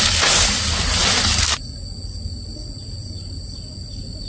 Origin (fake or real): real